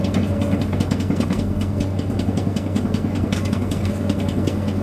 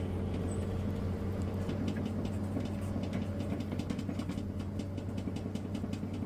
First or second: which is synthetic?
first